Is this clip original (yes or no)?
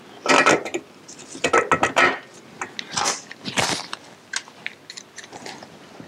yes